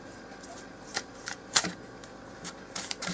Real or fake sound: fake